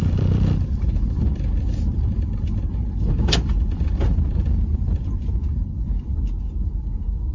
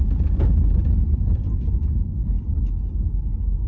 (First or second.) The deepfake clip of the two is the first